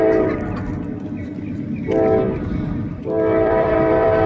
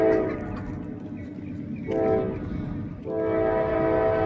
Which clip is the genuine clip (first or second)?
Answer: second